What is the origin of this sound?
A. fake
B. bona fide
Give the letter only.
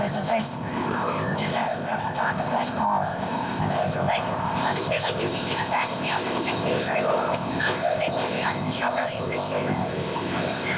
A